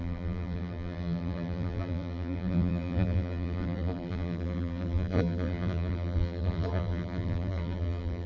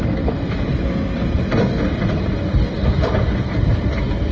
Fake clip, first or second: first